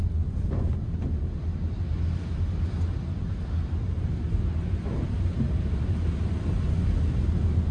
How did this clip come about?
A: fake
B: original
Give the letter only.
B